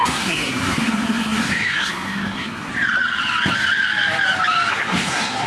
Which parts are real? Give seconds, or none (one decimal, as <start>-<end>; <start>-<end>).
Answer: 2.7-4.7